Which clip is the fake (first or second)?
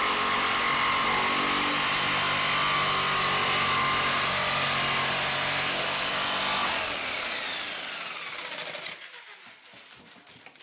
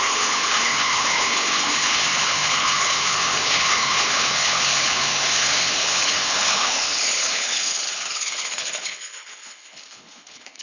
second